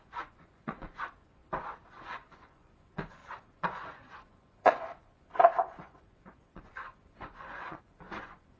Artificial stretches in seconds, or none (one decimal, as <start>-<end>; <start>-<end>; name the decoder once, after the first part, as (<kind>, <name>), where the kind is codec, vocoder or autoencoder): 0.0-1.4 (vocoder, Vocos); 1.9-8.6